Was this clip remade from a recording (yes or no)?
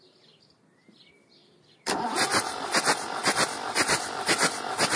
yes